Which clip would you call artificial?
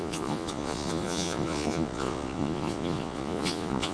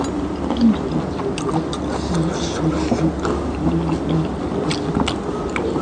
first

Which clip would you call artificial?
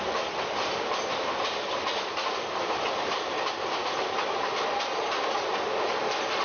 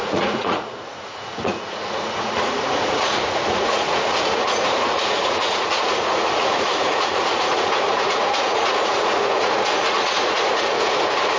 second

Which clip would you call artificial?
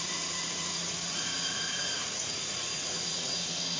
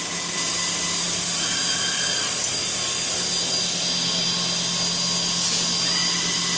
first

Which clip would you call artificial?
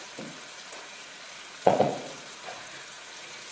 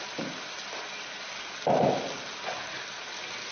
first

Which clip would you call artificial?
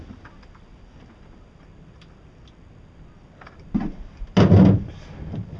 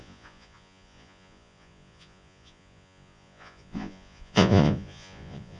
second